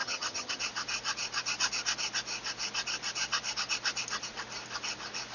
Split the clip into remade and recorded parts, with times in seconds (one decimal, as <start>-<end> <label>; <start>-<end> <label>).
0.0-0.6 remade; 0.6-5.3 recorded